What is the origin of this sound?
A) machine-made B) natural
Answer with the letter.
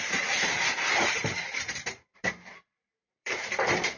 A